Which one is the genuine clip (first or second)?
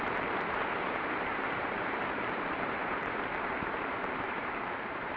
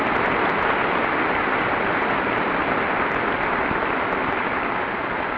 second